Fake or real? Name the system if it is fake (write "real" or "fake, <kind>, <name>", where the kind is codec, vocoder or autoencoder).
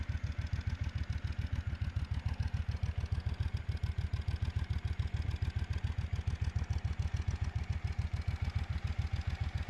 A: real